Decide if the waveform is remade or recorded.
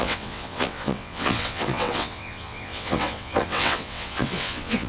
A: remade